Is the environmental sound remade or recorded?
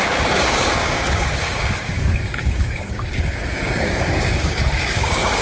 remade